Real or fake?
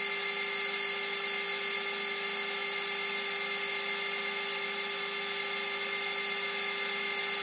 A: real